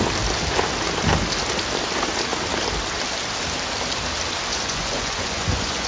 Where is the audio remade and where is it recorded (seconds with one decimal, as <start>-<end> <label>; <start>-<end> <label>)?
0.0-4.5 recorded; 4.5-5.9 remade